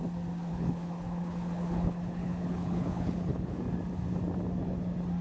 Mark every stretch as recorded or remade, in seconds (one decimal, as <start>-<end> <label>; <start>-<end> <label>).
0.0-0.5 recorded; 0.5-3.6 remade; 3.6-5.2 recorded